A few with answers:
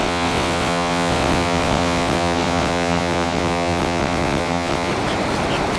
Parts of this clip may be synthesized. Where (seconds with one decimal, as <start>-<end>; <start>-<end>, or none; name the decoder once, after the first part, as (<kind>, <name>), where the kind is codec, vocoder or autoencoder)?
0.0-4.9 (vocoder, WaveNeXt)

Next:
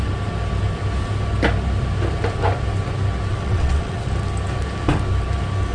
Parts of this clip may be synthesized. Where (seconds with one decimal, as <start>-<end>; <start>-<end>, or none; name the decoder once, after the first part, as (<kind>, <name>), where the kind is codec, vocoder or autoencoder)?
3.3-4.0 (vocoder, WaveNeXt)

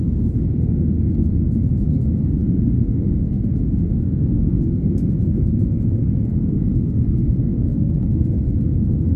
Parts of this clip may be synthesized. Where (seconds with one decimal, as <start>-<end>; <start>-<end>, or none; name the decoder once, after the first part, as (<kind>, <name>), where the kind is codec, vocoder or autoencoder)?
0.0-9.2 (codec, SNAC)